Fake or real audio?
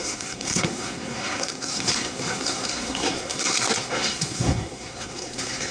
fake